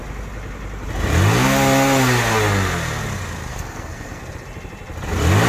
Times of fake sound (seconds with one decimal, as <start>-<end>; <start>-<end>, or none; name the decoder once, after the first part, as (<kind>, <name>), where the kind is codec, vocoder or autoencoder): 3.5-4.2 (codec, SNAC)